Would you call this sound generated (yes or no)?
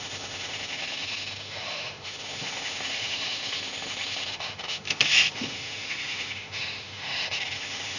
yes